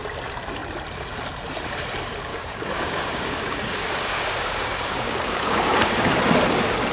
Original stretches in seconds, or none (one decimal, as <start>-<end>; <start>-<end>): 0.0-2.3; 6.2-6.9